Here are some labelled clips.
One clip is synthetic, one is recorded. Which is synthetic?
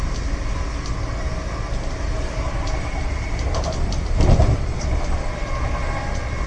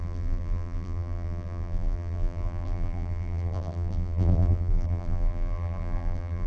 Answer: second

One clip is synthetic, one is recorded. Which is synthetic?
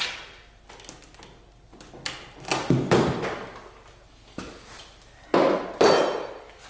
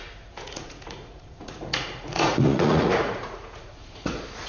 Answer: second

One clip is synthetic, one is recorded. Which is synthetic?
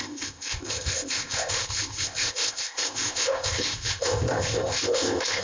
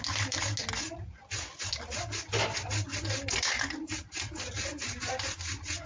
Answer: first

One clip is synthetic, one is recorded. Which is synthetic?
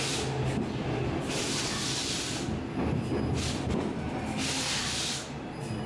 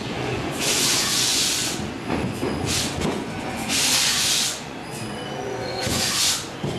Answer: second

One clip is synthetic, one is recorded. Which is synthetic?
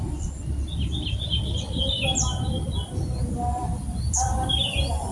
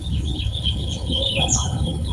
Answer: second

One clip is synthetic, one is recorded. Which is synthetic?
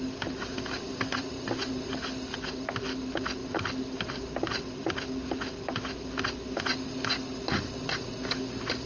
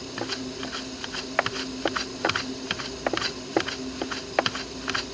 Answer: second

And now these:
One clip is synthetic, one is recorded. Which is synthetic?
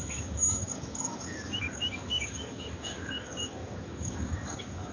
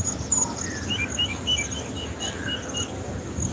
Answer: first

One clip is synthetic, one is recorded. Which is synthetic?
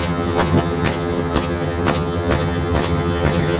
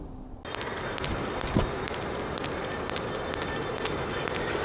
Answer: first